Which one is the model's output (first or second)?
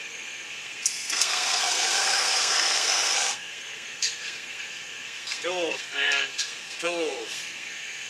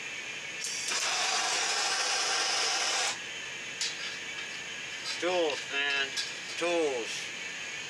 first